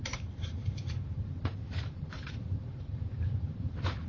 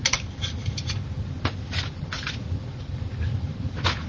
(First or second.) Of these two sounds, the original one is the second